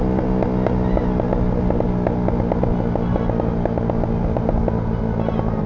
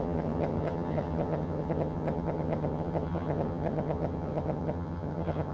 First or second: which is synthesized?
second